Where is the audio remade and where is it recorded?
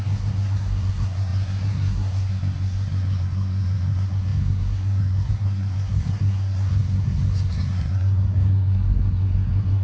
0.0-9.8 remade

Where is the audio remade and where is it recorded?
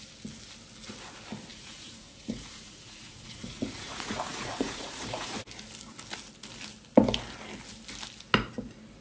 0.0-1.5 recorded; 1.5-5.4 remade; 5.4-9.0 recorded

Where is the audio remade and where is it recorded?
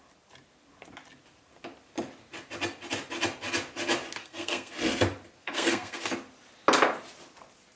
0.0-4.2 recorded; 4.2-4.7 remade; 4.7-5.4 recorded; 5.4-6.0 remade; 6.0-7.8 recorded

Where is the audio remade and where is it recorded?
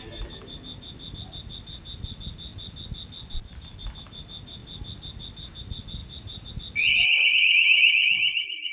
0.0-6.0 recorded; 6.0-6.5 remade; 6.5-8.7 recorded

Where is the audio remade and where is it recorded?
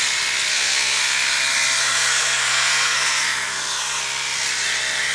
0.0-0.5 recorded; 0.5-1.0 remade; 1.0-1.8 recorded; 1.8-4.0 remade; 4.0-5.1 recorded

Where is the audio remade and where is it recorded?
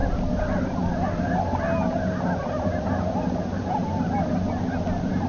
0.0-5.3 recorded